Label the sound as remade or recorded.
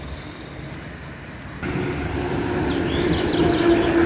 recorded